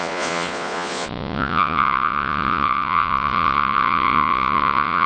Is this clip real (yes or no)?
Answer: no